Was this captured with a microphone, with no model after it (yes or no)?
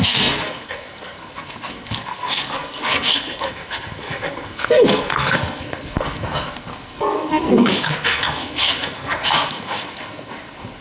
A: no